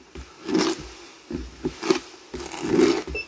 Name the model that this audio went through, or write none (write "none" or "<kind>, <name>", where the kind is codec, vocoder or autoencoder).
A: none